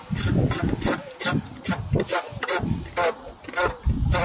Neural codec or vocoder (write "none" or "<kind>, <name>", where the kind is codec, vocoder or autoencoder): none